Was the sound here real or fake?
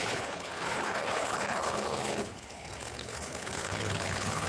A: fake